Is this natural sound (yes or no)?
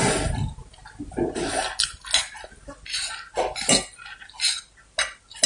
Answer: yes